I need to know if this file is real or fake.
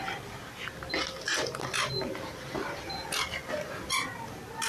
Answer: real